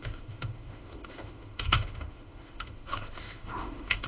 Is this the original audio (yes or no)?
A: no